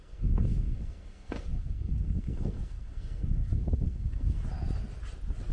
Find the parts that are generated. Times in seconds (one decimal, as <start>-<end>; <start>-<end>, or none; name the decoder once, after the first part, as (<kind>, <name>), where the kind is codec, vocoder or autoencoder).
0.0-4.4 (codec, SNAC)